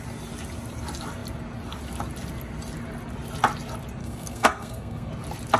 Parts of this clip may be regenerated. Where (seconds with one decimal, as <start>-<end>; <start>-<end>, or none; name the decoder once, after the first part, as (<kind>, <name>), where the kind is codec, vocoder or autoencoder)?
4.0-5.1 (codec, SNAC)